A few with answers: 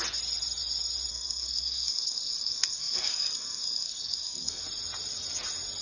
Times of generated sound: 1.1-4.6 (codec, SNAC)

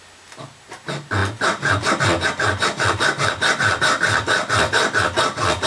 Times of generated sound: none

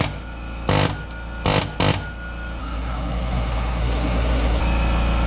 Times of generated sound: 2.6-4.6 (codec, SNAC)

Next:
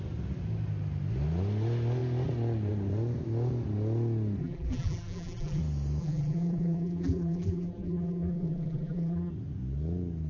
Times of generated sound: 4.4-5.6 (vocoder, BigVGAN v2); 6.0-9.3